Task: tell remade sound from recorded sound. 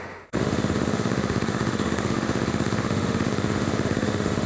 remade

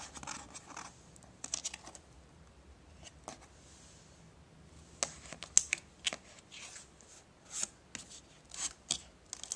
recorded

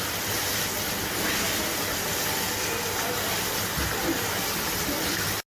recorded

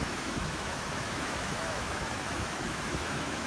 remade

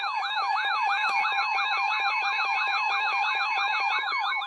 remade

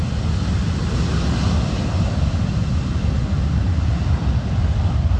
recorded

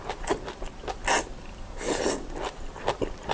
recorded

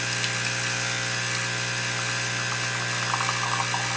recorded